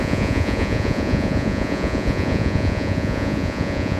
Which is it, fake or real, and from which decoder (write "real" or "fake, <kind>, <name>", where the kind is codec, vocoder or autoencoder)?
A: fake, vocoder, Vocos